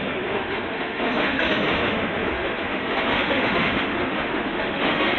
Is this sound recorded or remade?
remade